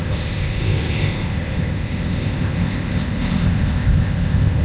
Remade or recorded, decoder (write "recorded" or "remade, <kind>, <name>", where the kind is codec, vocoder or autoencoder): remade, codec, ZipCodec